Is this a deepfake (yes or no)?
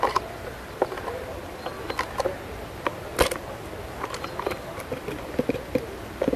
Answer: no